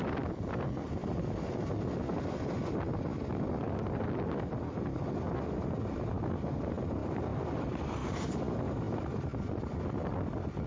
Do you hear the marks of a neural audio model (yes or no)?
no